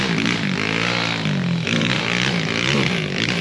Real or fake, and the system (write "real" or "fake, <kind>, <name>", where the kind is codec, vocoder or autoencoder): real